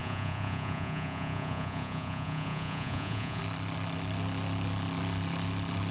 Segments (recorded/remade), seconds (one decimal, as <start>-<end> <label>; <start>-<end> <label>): 0.0-3.4 remade; 3.4-5.9 recorded